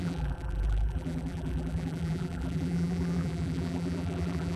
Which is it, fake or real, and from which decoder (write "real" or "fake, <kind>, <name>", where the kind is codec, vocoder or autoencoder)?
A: fake, vocoder, BigVGAN v2